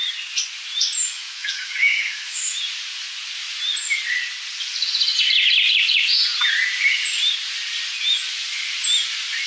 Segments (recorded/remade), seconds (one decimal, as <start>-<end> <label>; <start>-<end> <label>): 0.0-1.0 recorded; 1.0-2.6 remade; 2.6-9.5 recorded